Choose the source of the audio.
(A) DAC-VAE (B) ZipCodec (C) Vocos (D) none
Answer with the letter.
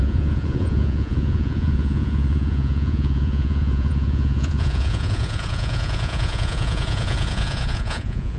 C